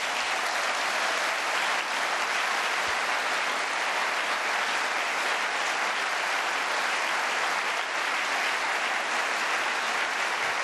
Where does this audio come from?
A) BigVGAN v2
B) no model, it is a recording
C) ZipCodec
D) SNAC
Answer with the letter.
B